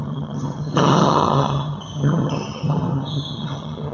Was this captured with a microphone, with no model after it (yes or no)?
no